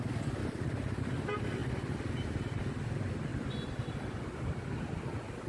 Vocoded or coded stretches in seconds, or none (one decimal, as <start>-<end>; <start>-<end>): 0.4-1.0